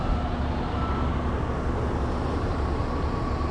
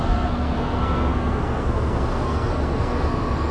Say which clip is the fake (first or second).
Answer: second